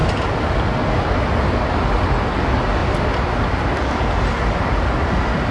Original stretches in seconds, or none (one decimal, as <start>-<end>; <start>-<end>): 0.0-5.5